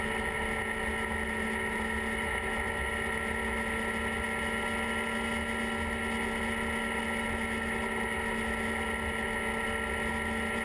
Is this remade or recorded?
recorded